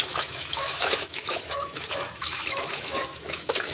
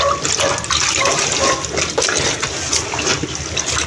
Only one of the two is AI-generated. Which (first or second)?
first